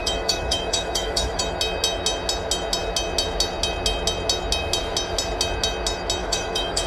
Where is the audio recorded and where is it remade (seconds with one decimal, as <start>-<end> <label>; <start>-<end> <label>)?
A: 0.0-1.4 remade; 1.4-6.2 recorded; 6.2-6.9 remade